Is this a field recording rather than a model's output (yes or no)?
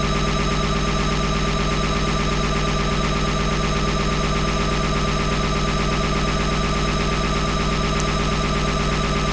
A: yes